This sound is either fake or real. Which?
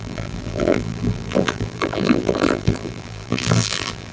fake